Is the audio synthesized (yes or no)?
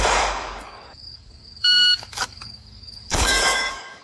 yes